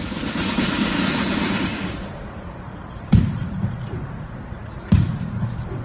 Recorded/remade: remade